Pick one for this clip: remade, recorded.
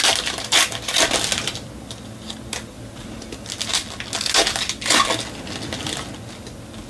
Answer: recorded